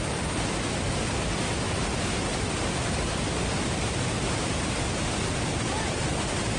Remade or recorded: recorded